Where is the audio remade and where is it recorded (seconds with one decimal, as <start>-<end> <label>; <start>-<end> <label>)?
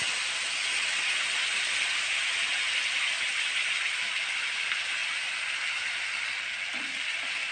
0.0-7.5 recorded